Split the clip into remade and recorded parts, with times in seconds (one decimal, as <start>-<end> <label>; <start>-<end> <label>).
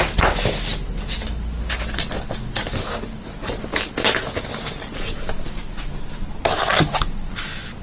0.0-7.8 recorded